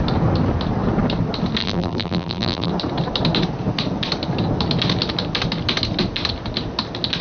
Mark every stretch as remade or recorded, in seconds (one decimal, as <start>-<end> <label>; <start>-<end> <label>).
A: 0.0-1.6 recorded; 1.6-2.7 remade; 2.7-7.2 recorded